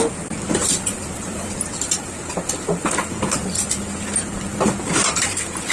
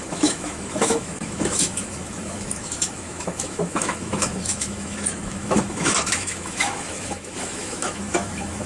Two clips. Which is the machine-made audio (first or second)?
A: second